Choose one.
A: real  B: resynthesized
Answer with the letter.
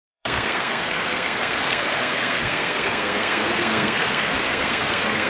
B